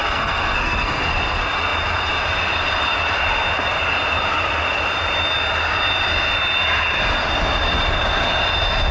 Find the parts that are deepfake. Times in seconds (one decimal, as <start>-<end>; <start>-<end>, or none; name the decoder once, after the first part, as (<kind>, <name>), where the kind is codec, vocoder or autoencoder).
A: 0.0-1.1 (codec, SNAC)